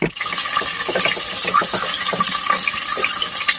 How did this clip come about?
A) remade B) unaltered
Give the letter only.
B